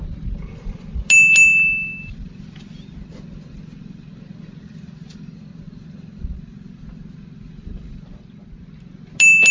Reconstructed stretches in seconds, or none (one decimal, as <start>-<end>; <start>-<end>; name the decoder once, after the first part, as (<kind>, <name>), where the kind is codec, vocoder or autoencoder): none